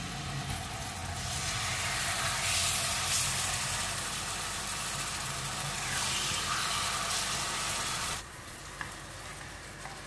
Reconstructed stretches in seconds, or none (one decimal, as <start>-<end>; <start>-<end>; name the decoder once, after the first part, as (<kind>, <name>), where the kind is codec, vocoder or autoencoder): 7.9-8.6 (vocoder, Vocos)